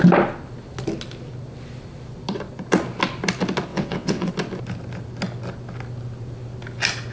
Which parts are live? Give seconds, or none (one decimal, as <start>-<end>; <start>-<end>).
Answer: 0.0-3.7; 4.3-7.1